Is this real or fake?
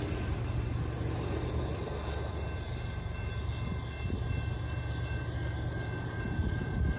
real